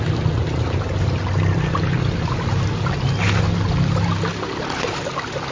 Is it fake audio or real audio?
real